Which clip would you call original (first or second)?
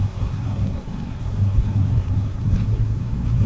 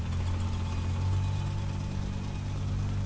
second